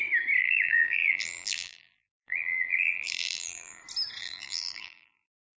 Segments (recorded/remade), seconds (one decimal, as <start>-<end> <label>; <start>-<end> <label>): 0.0-0.4 recorded; 0.4-3.8 remade; 3.8-4.2 recorded; 4.2-5.6 remade